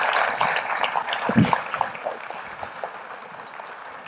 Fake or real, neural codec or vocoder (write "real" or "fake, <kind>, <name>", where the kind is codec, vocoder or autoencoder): real